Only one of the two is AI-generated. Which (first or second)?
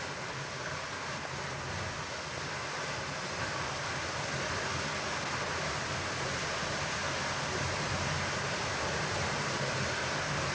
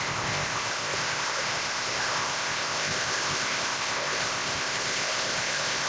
second